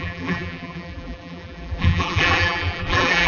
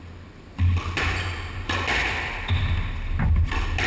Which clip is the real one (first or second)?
second